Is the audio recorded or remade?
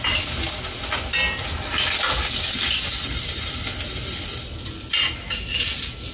recorded